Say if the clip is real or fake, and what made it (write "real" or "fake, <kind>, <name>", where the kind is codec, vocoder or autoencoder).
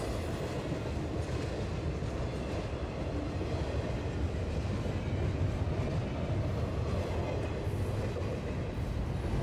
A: real